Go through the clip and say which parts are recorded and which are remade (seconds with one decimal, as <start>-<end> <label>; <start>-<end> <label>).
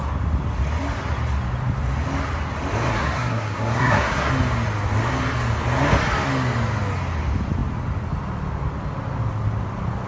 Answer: 0.0-2.9 recorded; 2.9-4.3 remade; 4.3-10.1 recorded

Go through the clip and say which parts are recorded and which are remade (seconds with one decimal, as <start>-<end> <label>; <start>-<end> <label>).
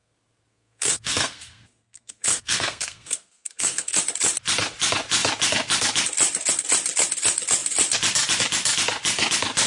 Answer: 0.0-4.0 remade; 4.0-9.7 recorded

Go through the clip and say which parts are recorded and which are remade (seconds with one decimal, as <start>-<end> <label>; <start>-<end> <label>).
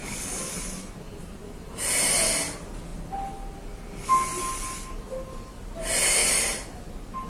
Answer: 0.0-0.5 remade; 0.5-7.3 recorded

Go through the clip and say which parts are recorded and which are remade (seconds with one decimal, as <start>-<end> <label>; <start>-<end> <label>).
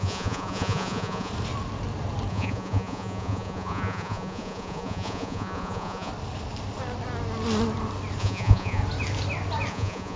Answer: 0.0-1.3 remade; 1.3-2.3 recorded; 2.3-6.1 remade; 6.1-8.2 recorded; 8.2-8.8 remade; 8.8-9.7 recorded; 9.7-10.2 remade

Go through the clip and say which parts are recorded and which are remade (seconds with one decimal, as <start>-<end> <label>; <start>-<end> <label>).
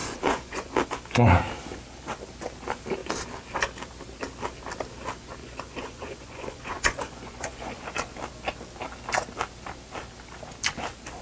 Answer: 0.0-0.7 remade; 0.7-5.4 recorded; 5.4-7.9 remade; 7.9-11.2 recorded